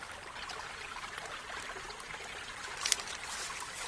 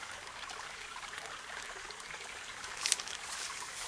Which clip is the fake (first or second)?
second